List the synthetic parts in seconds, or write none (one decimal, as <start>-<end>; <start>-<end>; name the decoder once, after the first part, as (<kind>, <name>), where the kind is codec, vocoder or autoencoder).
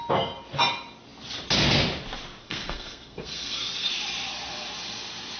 2.4-3.9 (codec, SNAC)